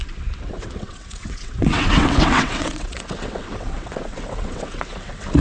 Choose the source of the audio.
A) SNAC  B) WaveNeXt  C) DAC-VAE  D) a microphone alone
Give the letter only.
B